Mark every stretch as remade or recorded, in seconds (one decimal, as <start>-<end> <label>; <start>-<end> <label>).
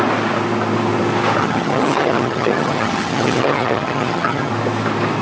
0.0-1.4 recorded; 1.4-4.5 remade; 4.5-5.2 recorded